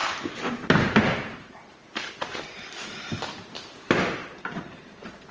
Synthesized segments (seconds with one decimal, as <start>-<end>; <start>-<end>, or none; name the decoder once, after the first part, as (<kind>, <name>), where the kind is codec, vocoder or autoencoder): 0.0-2.4 (vocoder, BigVGAN v2); 4.2-5.3